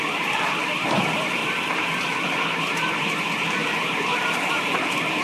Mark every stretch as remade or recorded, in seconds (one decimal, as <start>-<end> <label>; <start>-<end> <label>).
0.0-1.4 remade; 1.4-2.6 recorded; 2.6-3.6 remade; 3.6-4.5 recorded; 4.5-5.2 remade